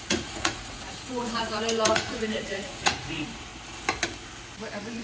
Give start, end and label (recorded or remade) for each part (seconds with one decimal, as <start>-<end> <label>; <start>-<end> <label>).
0.0-3.5 remade; 3.5-5.0 recorded

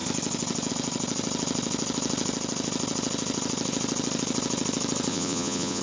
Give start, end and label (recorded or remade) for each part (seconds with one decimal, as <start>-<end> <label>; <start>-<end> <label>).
0.0-5.1 recorded; 5.1-5.8 remade

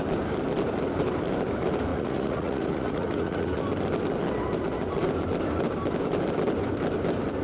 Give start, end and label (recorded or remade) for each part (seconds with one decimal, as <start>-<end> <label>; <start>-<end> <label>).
0.0-1.9 recorded; 1.9-3.6 remade; 3.6-7.4 recorded

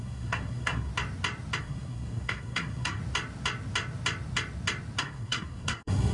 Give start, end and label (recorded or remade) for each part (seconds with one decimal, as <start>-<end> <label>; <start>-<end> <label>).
0.0-0.9 remade; 0.9-1.6 recorded; 1.6-3.0 remade; 3.0-5.0 recorded; 5.0-6.1 remade

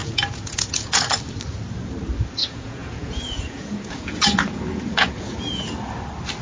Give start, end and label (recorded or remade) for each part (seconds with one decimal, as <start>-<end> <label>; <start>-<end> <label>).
0.0-1.1 remade; 1.1-2.4 recorded; 2.4-5.9 remade; 5.9-6.4 recorded

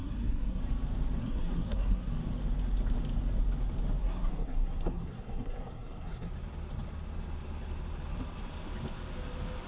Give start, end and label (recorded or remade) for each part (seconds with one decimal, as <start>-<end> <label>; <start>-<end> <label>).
0.0-0.6 remade; 0.6-1.2 recorded; 1.2-2.1 remade; 2.1-4.0 recorded; 4.0-6.3 remade; 6.3-9.7 recorded

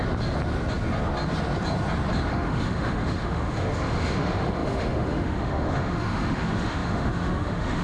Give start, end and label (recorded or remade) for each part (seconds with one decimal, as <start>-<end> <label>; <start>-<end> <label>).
0.0-2.3 recorded; 2.3-7.8 remade